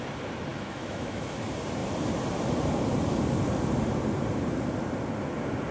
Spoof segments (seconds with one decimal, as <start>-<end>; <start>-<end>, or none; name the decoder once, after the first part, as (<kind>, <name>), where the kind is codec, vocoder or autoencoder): 0.5-1.3 (autoencoder, DAC-VAE)